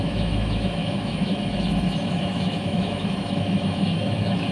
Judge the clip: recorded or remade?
remade